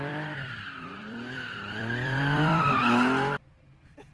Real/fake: fake